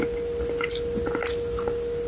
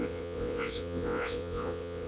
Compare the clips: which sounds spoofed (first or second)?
second